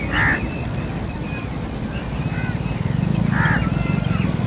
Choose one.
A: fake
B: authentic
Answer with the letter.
B